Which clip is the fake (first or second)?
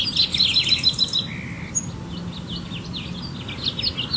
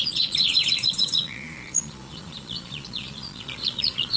second